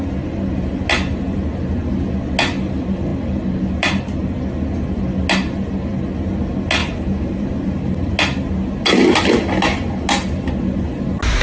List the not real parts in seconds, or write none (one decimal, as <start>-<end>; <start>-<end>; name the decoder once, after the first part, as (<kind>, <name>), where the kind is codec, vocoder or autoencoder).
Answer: 6.8-8.1 (vocoder, BigVGAN v2)